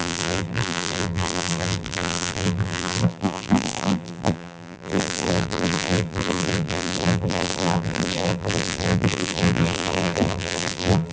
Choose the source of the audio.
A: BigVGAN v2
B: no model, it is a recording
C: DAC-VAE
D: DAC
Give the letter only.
A